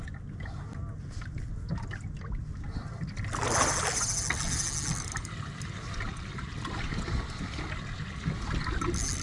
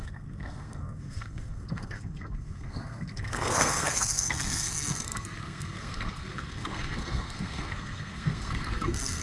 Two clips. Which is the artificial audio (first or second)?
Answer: second